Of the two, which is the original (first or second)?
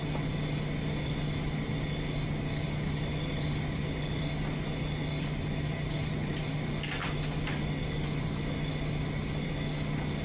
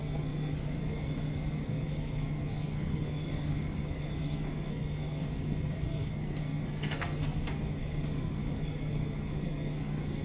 first